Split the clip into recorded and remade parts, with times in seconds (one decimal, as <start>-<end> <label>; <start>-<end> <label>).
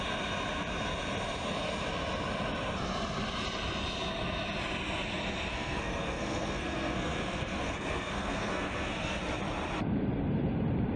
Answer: 0.0-5.5 recorded; 5.5-9.2 remade; 9.2-11.0 recorded